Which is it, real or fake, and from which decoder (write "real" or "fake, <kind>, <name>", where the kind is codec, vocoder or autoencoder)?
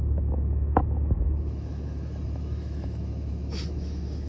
fake, autoencoder, DAC-VAE